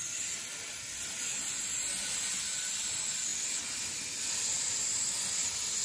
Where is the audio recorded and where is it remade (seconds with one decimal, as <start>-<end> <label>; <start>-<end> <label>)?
0.0-5.8 recorded